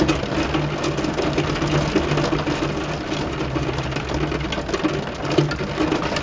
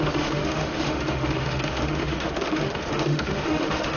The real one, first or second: first